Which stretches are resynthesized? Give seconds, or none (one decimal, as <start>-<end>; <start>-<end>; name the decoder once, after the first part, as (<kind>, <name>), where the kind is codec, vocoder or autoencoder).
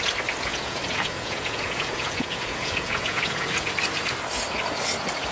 0.5-3.7 (vocoder, Vocos)